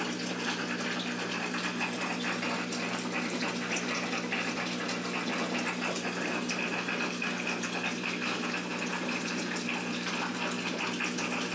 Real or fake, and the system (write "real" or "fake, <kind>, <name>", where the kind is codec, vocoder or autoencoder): real